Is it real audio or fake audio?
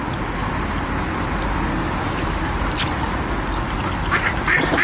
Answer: real